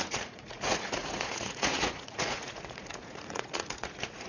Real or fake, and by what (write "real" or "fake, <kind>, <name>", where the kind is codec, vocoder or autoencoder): fake, vocoder, Vocos